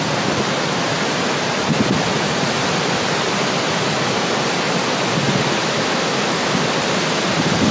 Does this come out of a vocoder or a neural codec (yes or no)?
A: no